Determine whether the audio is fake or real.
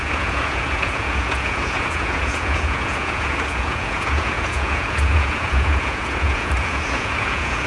fake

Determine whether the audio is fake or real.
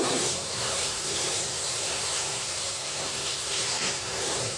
fake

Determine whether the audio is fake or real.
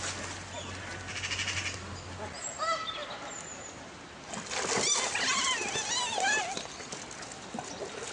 real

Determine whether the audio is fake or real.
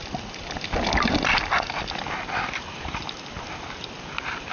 real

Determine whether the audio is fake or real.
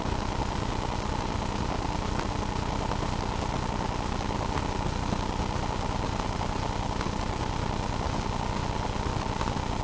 real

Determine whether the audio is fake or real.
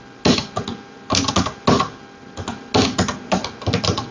real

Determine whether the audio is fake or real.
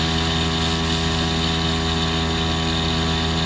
real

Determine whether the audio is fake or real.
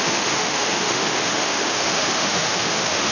fake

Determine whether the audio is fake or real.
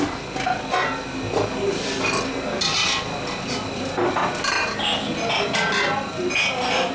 real